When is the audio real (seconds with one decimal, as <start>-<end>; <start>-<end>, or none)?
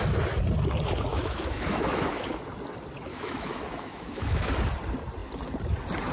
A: 0.0-1.1; 2.4-3.1; 4.5-6.1